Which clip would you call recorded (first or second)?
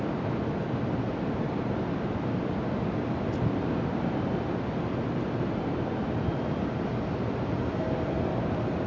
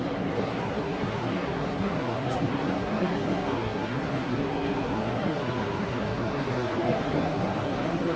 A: first